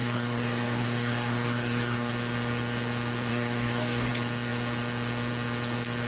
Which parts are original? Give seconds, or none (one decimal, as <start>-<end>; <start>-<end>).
2.1-3.3; 4.1-6.1